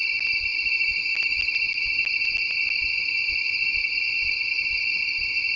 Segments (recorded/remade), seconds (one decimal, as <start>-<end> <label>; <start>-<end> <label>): 0.0-5.6 recorded